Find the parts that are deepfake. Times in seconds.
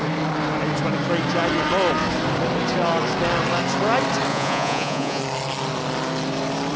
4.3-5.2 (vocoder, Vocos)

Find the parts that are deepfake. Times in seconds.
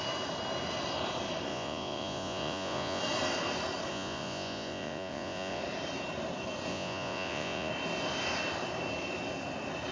1.5-3.0 (vocoder, Vocos); 3.9-5.6; 6.7-7.7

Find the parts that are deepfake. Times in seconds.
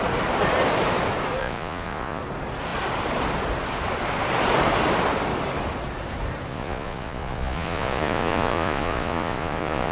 1.4-2.2 (vocoder, Vocos); 6.5-9.9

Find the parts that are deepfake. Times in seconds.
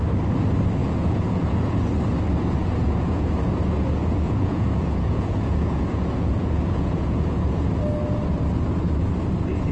0.8-1.8 (vocoder, Vocos); 2.6-3.5; 4.0-7.8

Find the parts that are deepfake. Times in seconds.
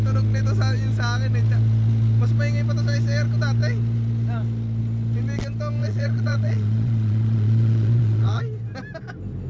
5.8-8.4 (vocoder, Vocos)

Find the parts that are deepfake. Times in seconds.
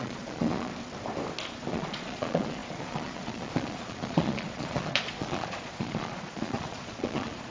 0.0-0.7 (vocoder, Vocos); 1.7-7.5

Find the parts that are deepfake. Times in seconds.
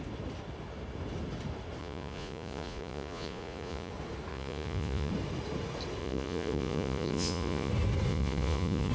1.8-3.9 (vocoder, Vocos); 4.3-5.1; 6.0-7.7; 8.1-8.9